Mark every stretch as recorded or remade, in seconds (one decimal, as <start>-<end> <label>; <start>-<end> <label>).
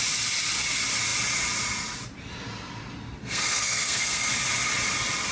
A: 0.0-3.2 recorded; 3.2-4.3 remade; 4.3-5.3 recorded